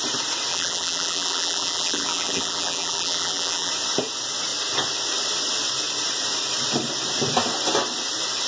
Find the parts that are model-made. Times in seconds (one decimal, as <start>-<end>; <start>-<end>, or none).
0.5-3.7